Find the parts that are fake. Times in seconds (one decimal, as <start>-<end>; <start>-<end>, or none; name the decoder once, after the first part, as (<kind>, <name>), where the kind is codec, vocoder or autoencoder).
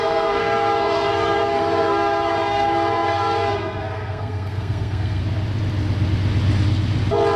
0.0-5.2 (codec, SNAC)